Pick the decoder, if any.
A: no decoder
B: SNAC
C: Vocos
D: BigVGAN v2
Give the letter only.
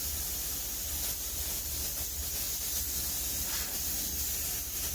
A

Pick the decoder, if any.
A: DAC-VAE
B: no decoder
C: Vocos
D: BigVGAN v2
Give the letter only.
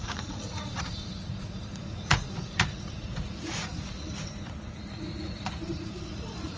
C